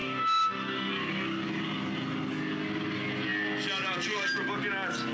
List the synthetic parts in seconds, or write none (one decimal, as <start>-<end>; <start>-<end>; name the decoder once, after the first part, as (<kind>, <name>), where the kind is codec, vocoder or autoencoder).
0.0-0.9 (autoencoder, DAC-VAE)

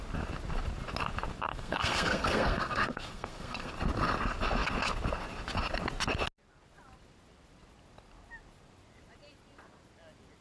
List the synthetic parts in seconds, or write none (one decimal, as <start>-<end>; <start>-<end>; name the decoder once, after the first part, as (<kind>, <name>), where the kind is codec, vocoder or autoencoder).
1.5-3.7 (codec, SNAC)

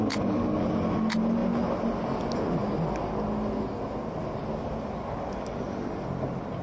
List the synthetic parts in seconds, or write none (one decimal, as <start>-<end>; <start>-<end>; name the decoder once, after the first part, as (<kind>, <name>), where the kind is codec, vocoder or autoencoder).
none